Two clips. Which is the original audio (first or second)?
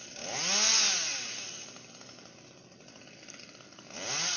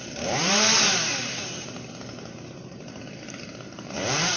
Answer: first